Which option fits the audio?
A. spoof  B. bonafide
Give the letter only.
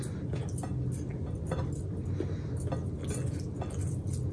B